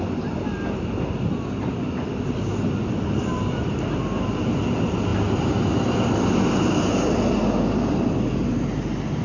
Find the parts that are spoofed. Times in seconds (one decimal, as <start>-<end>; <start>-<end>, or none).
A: 5.1-5.7